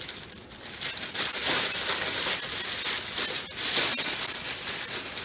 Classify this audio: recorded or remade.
recorded